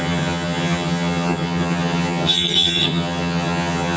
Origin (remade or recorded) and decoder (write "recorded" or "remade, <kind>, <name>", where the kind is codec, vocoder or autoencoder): remade, vocoder, HiFi-GAN